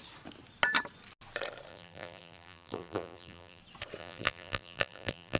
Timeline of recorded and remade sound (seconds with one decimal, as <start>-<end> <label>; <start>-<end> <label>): 0.0-1.7 recorded; 1.7-3.6 remade; 3.6-4.0 recorded; 4.0-5.4 remade